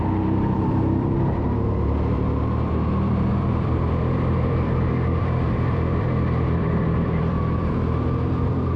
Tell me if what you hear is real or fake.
fake